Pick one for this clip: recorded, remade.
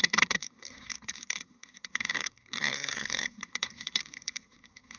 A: remade